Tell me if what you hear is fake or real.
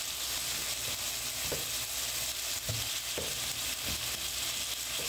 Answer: real